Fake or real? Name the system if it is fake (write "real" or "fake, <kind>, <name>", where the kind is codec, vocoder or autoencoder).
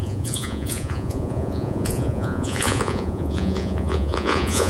fake, vocoder, Vocos